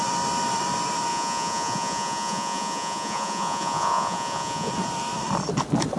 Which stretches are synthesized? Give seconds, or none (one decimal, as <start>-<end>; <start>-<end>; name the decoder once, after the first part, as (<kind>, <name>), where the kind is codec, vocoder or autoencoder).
1.1-4.7 (vocoder, Vocos)